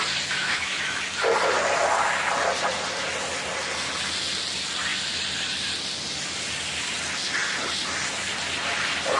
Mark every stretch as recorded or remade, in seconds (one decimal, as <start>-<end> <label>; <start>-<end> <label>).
0.0-0.4 recorded; 0.4-1.0 remade; 1.0-9.2 recorded